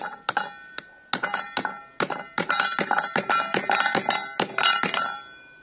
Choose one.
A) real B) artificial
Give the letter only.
A